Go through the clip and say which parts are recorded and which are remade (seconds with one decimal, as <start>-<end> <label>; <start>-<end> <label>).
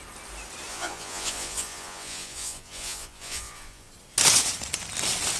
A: 0.0-0.7 recorded; 0.7-3.9 remade; 3.9-5.4 recorded